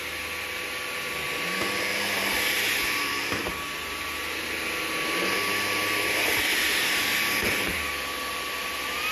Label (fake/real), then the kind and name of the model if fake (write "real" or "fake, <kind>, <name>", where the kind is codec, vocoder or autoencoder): real